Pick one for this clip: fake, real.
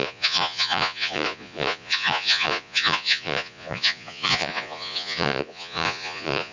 fake